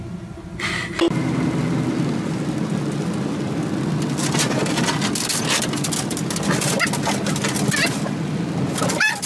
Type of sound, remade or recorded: recorded